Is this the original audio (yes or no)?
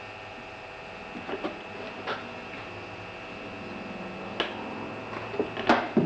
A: yes